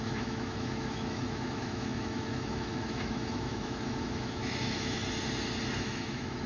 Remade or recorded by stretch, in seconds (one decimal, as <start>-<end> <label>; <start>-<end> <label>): 0.0-5.0 remade; 5.0-5.8 recorded; 5.8-6.5 remade